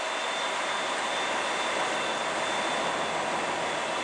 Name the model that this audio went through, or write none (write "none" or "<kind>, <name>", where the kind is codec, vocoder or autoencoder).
none